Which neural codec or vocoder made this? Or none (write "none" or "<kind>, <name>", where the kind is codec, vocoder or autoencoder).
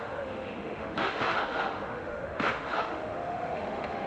autoencoder, DAC-VAE